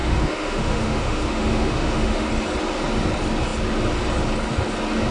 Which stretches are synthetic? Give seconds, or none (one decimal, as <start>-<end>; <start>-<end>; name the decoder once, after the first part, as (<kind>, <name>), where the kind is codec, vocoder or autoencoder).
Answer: 0.0-2.3 (autoencoder, DAC-VAE)